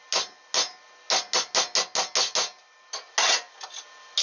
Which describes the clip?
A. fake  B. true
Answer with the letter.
B